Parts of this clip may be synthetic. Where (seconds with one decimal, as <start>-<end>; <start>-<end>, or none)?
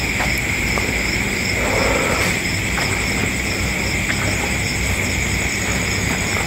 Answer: none